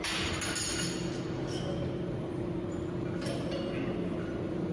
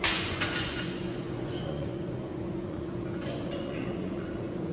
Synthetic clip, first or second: second